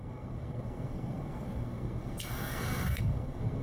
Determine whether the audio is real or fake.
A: fake